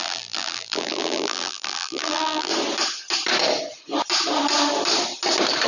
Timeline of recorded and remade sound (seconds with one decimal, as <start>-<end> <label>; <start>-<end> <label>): 0.0-2.5 remade; 2.5-5.7 recorded